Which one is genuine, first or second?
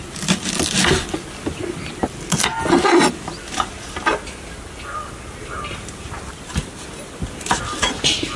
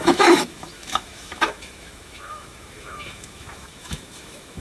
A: first